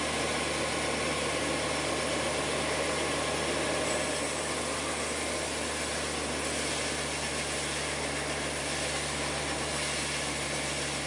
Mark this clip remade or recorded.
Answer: recorded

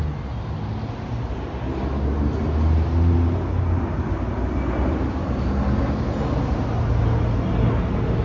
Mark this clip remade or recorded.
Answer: recorded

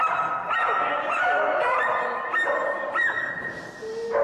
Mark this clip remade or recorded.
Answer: recorded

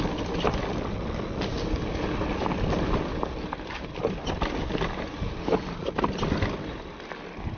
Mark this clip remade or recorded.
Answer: recorded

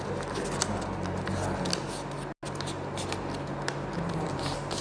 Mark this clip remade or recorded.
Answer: recorded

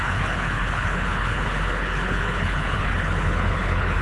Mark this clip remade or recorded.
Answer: remade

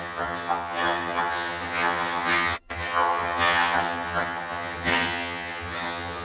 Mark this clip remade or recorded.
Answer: remade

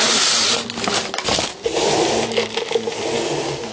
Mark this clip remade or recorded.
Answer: recorded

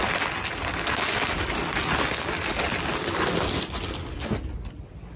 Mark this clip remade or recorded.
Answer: recorded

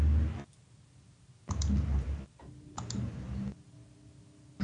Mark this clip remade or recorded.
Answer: recorded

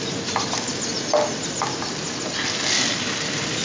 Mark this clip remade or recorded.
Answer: recorded